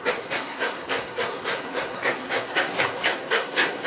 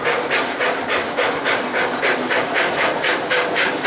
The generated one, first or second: first